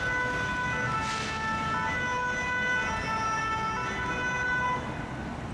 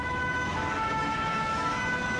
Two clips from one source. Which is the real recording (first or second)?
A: first